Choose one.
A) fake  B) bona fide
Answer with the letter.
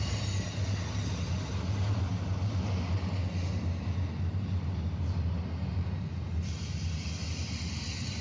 B